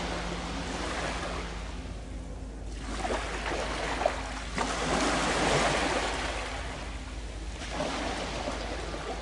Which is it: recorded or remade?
recorded